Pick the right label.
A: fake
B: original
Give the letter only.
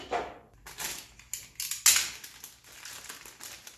B